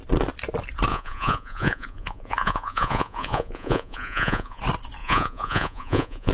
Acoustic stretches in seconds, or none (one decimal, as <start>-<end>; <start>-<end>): 0.0-0.9; 4.6-5.0